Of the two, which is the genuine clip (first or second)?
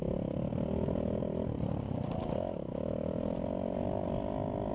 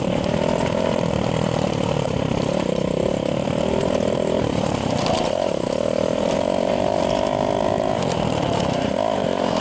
first